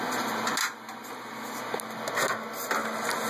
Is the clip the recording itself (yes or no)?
yes